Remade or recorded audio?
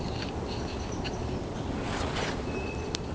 recorded